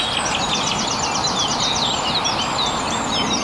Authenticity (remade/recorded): recorded